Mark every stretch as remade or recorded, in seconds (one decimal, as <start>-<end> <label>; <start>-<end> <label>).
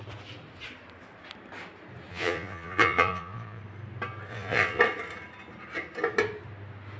0.0-2.1 recorded; 2.1-3.6 remade; 3.6-4.3 recorded; 4.3-4.8 remade; 4.8-7.0 recorded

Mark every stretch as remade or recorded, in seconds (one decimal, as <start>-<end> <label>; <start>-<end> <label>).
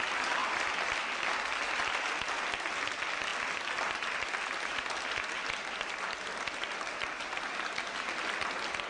0.0-8.9 recorded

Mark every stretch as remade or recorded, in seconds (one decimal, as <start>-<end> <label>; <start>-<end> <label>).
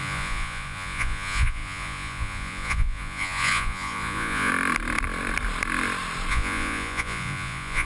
0.0-4.5 remade; 4.5-6.3 recorded; 6.3-7.9 remade